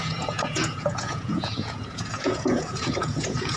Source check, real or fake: fake